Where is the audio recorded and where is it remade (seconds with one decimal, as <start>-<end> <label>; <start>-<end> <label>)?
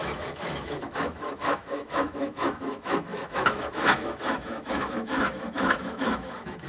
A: 0.0-6.7 remade